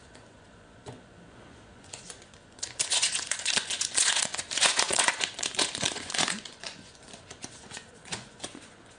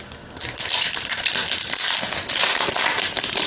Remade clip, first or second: first